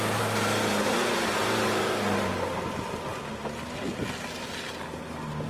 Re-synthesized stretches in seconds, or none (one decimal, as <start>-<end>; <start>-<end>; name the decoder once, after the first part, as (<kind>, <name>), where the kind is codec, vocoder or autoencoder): none